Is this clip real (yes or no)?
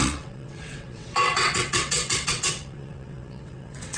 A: no